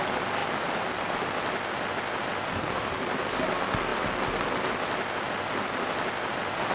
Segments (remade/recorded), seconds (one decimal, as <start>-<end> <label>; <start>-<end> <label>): 0.0-6.7 recorded